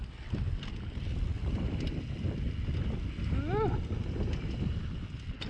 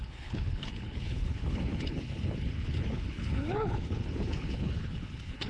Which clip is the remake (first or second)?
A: second